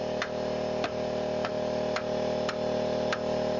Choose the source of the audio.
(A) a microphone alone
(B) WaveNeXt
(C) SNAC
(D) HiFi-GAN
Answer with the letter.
A